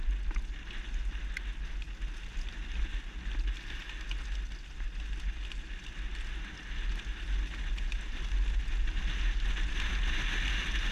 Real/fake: real